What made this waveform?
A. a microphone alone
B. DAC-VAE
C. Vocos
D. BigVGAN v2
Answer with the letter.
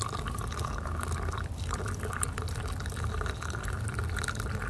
A